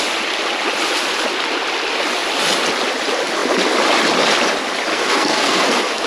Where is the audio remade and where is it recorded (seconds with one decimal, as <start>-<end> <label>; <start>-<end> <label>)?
0.0-4.9 recorded; 4.9-6.1 remade